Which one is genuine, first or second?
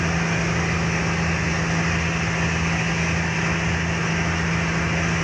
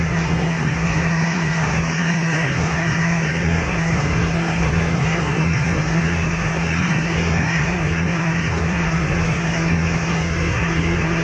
first